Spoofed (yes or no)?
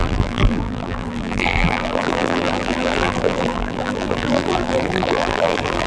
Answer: yes